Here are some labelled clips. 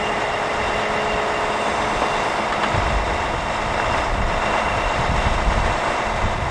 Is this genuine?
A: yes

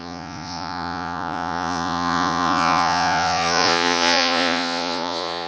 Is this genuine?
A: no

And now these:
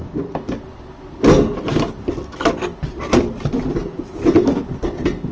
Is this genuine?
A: yes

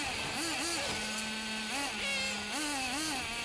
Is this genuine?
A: yes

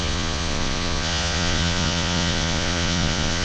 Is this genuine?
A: no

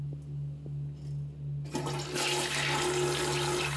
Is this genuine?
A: yes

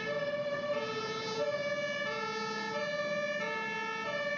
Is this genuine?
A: yes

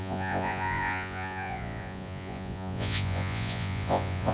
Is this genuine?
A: no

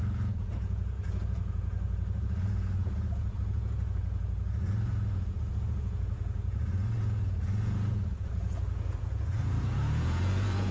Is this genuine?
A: no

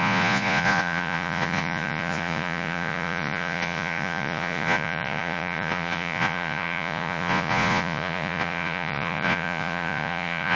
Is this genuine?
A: no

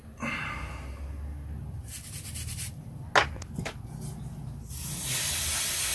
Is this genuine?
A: yes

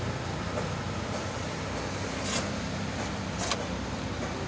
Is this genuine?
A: yes